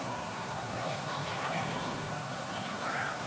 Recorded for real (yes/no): no